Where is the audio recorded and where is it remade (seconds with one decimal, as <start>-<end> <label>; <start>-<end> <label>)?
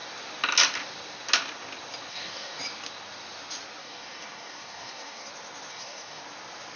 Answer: 0.0-2.1 recorded; 2.1-2.6 remade; 2.6-3.8 recorded; 3.8-5.3 remade; 5.3-5.7 recorded; 5.7-6.2 remade; 6.2-6.8 recorded